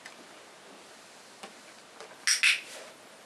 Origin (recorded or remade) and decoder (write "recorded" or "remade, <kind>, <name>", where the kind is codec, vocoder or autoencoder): recorded